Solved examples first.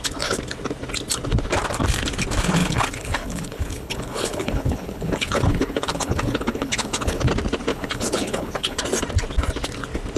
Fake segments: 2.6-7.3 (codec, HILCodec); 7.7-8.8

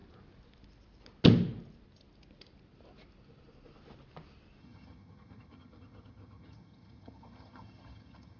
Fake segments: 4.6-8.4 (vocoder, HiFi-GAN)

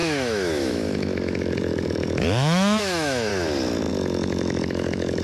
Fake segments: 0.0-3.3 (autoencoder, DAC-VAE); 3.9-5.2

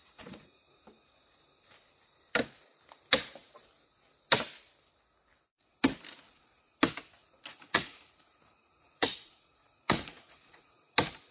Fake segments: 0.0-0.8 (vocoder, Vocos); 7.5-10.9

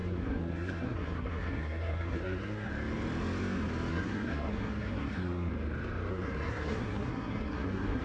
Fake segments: 0.0-2.7 (codec, SNAC); 3.9-5.5; 6.1-8.0

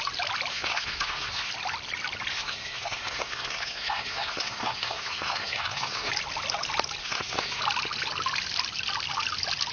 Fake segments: 0.5-1.5 (codec, SNAC); 2.3-6.1; 7.0-7.6

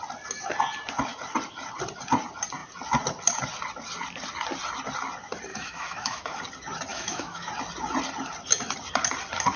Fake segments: 5.5-6.4 (autoencoder, DAC-VAE); 6.9-7.5

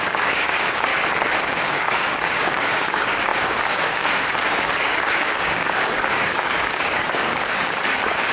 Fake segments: 0.0-0.9 (codec, DAC); 1.4-8.3